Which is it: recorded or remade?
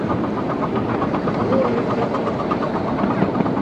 recorded